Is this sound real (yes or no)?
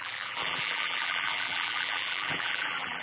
no